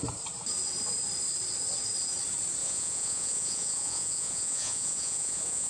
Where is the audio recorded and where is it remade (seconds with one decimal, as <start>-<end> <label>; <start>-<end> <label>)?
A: 0.0-2.6 recorded; 2.6-5.7 remade